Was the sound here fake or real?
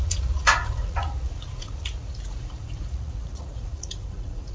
fake